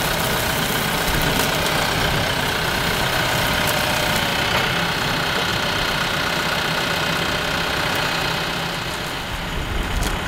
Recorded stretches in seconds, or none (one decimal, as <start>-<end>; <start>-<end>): 0.0-10.3